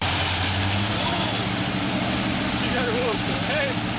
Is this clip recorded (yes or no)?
no